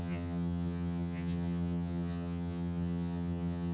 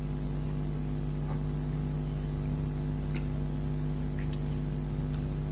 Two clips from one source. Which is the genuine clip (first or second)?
second